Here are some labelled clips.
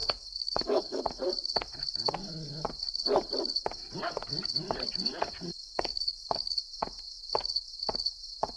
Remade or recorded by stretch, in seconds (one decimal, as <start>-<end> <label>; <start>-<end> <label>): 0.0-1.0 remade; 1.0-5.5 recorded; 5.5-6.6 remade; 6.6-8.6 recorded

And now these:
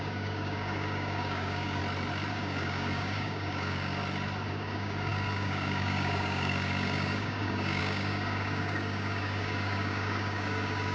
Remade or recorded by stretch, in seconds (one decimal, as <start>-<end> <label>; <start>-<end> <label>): 0.0-1.8 remade; 1.8-2.3 recorded; 2.3-4.0 remade; 4.0-4.5 recorded; 4.5-10.9 remade

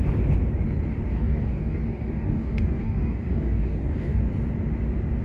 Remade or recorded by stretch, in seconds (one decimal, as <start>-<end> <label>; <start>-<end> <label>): 0.0-1.1 recorded; 1.1-4.2 remade; 4.2-5.2 recorded